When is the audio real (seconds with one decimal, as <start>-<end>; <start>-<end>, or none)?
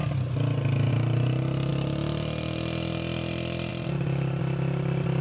0.0-3.7; 4.4-5.2